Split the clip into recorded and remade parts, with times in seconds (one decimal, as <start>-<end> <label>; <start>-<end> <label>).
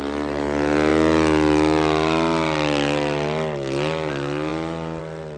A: 0.0-5.4 recorded